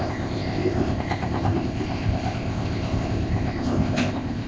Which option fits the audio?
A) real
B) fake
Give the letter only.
B